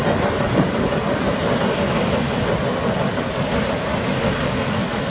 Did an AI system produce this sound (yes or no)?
no